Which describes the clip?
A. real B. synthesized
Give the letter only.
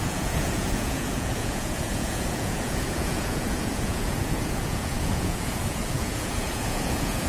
B